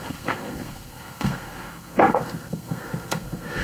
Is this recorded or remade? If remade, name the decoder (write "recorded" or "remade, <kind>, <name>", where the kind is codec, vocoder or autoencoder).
remade, codec, SNAC